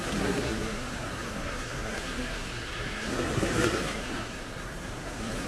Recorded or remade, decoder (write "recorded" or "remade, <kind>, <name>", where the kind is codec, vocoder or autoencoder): remade, codec, SNAC